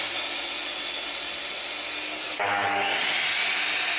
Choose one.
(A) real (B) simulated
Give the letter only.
A